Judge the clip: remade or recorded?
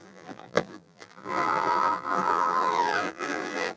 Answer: remade